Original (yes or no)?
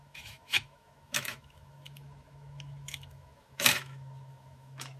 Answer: no